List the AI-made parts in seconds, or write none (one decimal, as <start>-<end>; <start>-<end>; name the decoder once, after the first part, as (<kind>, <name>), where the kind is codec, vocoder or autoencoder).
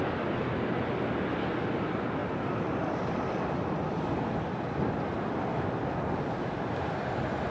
none